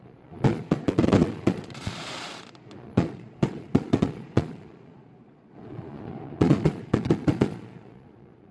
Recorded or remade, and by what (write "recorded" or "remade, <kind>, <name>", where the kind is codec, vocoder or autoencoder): remade, vocoder, Vocos